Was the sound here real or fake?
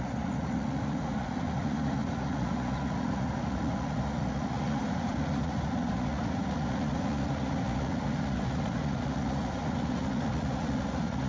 fake